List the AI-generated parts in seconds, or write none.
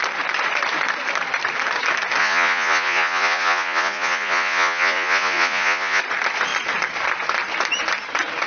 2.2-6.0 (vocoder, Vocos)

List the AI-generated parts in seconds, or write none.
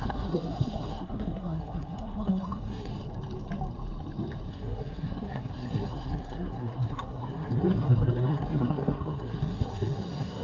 0.0-2.9 (codec, SNAC); 4.5-10.4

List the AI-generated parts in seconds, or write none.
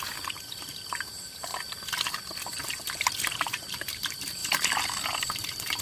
0.0-1.5 (vocoder, BigVGAN v2); 2.7-5.8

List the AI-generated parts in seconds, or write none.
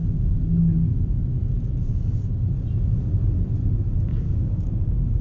4.1-4.7 (codec, DAC)